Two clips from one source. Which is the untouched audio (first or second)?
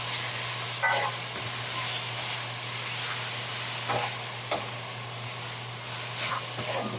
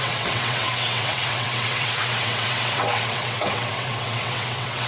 first